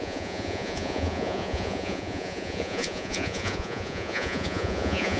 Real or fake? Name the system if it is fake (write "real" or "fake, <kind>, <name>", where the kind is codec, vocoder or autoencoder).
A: fake, vocoder, Vocos